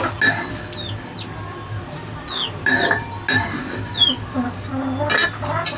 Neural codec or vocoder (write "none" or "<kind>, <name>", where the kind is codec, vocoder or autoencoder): none